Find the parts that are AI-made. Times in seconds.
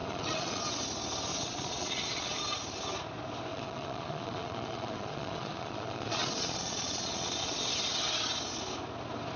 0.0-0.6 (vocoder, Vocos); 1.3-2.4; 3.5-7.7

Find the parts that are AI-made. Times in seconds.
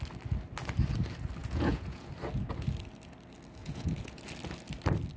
1.4-2.1 (vocoder, Vocos); 3.6-4.2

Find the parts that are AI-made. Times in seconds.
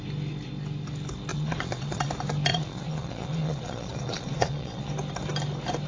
1.3-2.1 (vocoder, Vocos); 2.5-4.9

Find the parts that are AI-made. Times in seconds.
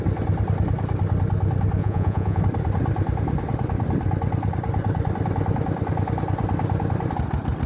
1.8-2.4 (vocoder, Vocos)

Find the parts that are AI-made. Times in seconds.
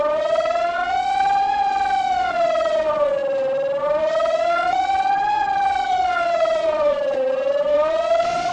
0.0-3.2 (vocoder, Vocos); 3.8-8.5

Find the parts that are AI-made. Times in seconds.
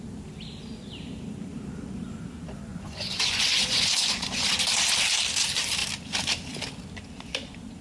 2.7-4.5 (vocoder, Vocos)